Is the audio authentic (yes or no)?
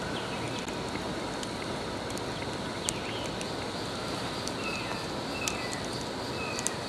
yes